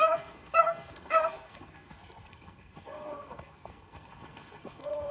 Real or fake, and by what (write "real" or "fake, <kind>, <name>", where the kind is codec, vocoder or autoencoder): fake, codec, SNAC